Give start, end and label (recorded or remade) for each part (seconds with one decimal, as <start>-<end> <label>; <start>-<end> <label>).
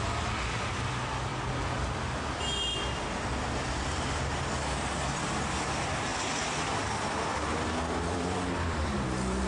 0.0-6.1 recorded; 6.1-8.9 remade; 8.9-9.5 recorded